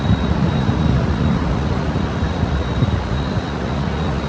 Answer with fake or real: fake